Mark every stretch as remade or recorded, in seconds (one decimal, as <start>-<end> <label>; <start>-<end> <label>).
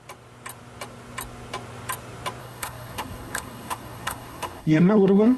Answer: 0.0-2.4 recorded; 2.4-5.4 remade